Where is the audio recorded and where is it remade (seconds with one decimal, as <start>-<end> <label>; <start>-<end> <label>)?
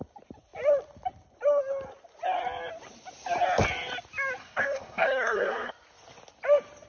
0.0-4.4 recorded; 4.4-5.7 remade; 5.7-6.9 recorded